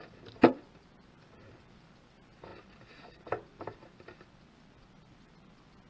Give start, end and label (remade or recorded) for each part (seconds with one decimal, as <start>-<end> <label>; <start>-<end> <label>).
0.0-5.9 recorded